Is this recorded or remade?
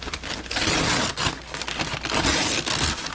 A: recorded